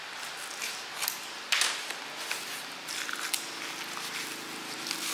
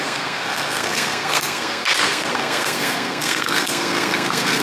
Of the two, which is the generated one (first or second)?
second